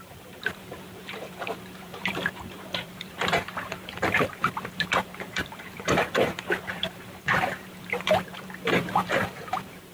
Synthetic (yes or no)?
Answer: yes